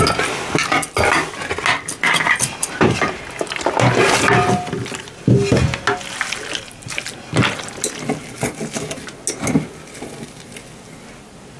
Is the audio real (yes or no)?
yes